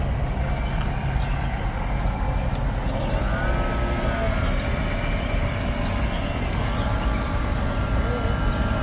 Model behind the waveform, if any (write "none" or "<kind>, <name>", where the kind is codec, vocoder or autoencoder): none